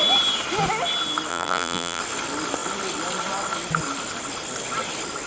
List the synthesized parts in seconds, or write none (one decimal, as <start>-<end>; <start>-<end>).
1.3-2.0